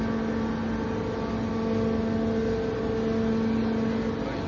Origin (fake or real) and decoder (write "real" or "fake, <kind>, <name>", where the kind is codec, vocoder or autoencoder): real